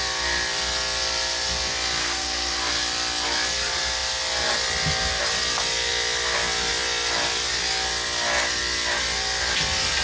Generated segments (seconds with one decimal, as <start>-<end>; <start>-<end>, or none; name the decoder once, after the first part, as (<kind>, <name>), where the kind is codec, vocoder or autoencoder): 2.0-2.6 (codec, SNAC)